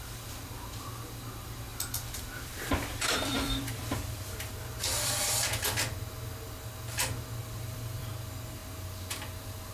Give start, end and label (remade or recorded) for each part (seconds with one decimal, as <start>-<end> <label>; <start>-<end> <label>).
0.0-1.7 recorded; 1.7-5.4 remade; 5.4-7.4 recorded; 7.4-8.1 remade; 8.1-9.7 recorded